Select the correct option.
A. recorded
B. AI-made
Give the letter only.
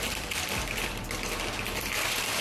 B